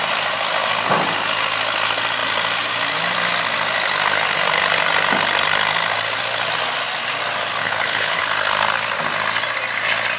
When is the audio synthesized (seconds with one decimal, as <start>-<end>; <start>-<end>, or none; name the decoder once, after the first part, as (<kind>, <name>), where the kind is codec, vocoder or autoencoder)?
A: 7.6-8.2 (codec, HILCodec)